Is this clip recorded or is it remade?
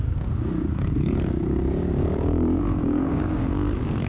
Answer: remade